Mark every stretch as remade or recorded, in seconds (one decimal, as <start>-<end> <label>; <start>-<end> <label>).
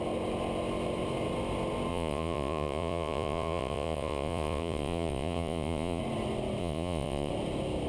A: 0.0-1.9 recorded; 1.9-6.0 remade; 6.0-6.6 recorded; 6.6-7.3 remade; 7.3-7.9 recorded